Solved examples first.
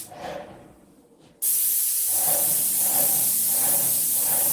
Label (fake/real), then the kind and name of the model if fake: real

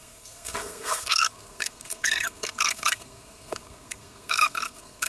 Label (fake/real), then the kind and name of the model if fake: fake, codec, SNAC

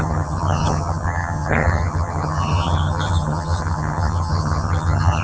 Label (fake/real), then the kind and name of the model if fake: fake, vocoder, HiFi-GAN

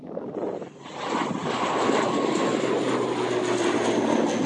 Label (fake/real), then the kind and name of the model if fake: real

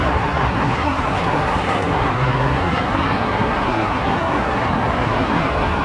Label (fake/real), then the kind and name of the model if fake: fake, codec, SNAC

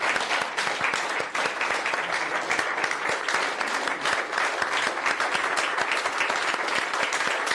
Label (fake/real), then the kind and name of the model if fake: fake, vocoder, BigVGAN v2